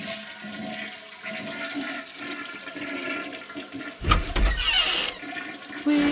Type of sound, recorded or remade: recorded